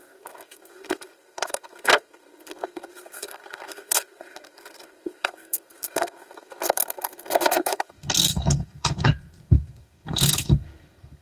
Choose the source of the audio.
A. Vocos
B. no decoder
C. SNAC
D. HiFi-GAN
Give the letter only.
C